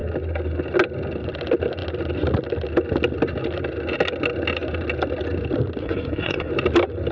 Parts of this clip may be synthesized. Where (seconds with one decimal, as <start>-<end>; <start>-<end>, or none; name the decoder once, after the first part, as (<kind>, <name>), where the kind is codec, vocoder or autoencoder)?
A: 5.8-6.5 (codec, SNAC)